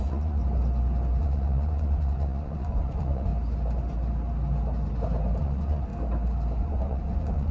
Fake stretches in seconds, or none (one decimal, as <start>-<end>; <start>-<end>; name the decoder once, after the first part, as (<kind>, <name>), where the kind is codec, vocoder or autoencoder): 0.0-0.4 (vocoder, Vocos); 1.2-3.3; 5.4-5.9; 6.6-7.5